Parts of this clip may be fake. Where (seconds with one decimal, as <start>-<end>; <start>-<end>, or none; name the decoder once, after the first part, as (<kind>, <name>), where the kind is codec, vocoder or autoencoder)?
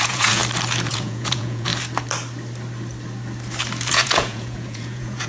0.0-0.4 (vocoder, Vocos); 0.9-1.7; 3.9-5.3